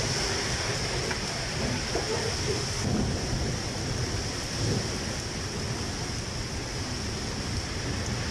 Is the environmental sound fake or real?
real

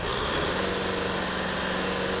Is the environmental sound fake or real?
real